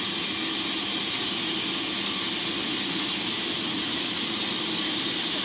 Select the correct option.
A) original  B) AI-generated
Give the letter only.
A